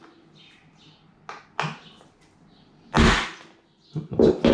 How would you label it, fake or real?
real